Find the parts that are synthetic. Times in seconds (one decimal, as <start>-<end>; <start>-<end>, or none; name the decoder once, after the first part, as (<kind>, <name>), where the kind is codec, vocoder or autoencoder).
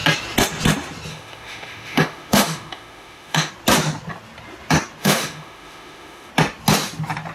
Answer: 1.1-3.5 (autoencoder, DAC-VAE); 5.0-6.3